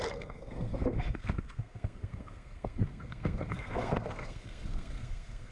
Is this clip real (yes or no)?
no